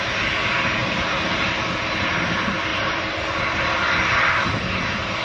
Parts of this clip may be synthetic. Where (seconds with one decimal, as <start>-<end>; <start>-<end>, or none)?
0.8-1.6; 2.7-4.8